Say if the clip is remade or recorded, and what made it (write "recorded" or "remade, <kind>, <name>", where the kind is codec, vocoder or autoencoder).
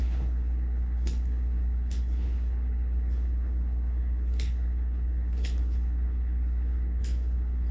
remade, codec, HILCodec